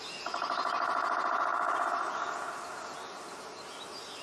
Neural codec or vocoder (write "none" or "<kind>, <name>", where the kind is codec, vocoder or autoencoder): none